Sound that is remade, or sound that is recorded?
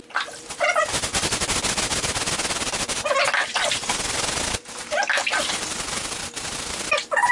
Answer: recorded